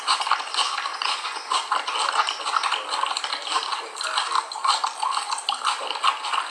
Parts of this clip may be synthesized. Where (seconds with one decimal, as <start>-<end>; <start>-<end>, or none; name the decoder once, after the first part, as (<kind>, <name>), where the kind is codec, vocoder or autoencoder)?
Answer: 0.9-1.6 (vocoder, Vocos)